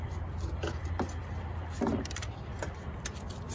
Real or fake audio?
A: real